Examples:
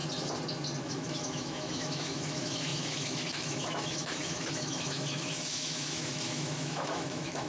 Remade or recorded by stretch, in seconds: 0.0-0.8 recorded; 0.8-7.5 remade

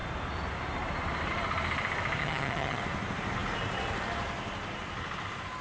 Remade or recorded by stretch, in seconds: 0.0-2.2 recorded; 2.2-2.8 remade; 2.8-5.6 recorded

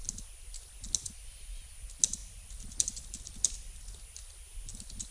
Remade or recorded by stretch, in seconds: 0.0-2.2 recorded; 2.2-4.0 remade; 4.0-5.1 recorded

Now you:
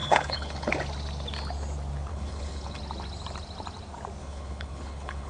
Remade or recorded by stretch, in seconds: 0.0-0.7 remade; 0.7-2.1 recorded; 2.1-2.8 remade; 2.8-4.2 recorded; 4.2-5.3 remade

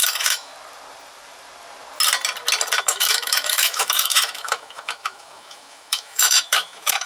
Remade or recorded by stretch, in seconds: 0.0-0.5 remade; 0.5-2.8 recorded; 2.8-7.1 remade